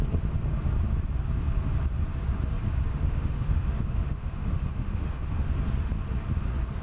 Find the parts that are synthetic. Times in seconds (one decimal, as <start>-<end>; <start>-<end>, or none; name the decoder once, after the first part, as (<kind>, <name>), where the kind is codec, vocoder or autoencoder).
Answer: 2.9-5.5 (autoencoder, DAC-VAE)